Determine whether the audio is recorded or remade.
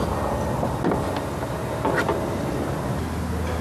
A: recorded